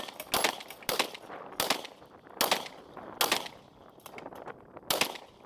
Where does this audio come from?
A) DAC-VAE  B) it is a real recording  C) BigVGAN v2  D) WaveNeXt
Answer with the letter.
B